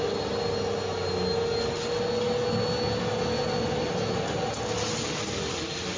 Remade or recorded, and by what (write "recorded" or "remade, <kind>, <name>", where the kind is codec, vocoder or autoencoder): recorded